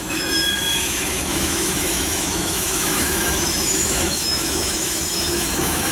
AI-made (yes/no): yes